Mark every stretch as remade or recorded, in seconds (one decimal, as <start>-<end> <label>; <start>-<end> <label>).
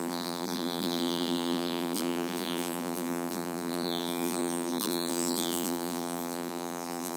0.0-7.2 remade